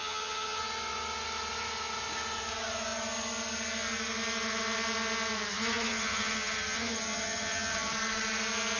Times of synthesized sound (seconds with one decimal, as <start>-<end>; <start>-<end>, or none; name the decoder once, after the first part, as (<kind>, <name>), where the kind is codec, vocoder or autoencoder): 0.0-0.6 (vocoder, HiFi-GAN); 5.5-7.9